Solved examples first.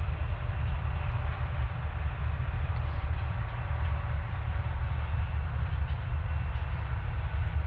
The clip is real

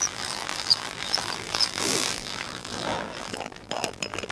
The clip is fake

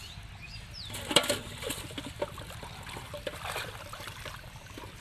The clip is real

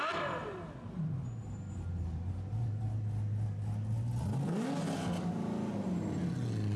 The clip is real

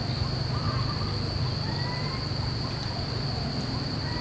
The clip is real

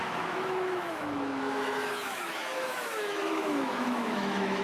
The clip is fake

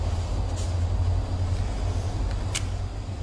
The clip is real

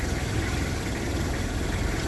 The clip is real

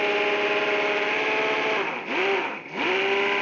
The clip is real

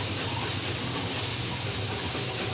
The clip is real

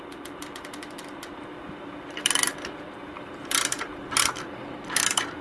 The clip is fake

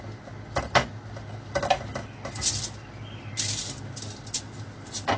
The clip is real